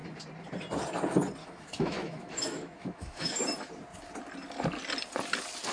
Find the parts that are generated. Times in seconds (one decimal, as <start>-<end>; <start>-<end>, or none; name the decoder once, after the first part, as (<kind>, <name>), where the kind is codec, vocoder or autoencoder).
1.4-3.3 (autoencoder, DAC-VAE)